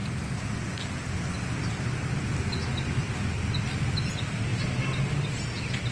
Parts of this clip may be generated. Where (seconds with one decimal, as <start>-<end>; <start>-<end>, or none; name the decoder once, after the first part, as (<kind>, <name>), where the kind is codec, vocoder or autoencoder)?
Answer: none